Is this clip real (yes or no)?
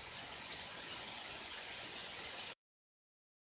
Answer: no